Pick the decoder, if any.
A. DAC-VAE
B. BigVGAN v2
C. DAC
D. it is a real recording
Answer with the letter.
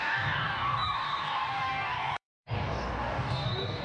C